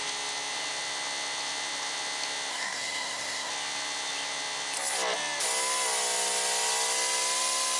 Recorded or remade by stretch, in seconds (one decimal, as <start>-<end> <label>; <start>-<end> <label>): 0.0-2.5 recorded; 2.5-3.5 remade; 3.5-7.8 recorded